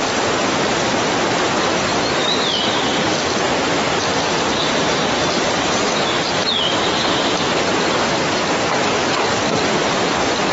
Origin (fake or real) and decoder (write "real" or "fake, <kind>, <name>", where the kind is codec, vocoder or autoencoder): real